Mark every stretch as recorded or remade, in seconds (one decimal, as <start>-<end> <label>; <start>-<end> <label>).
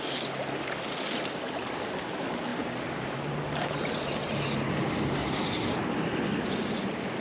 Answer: 0.0-7.2 recorded